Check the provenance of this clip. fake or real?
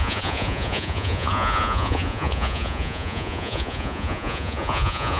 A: fake